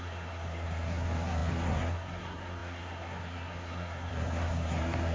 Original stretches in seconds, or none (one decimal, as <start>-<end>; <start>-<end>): none